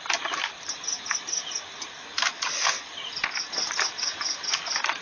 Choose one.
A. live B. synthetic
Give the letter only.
A